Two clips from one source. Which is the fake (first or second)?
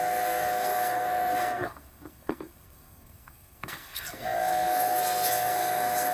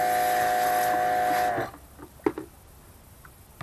first